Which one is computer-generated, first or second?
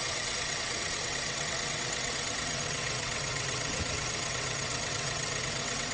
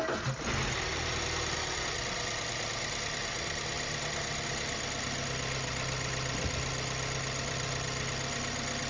first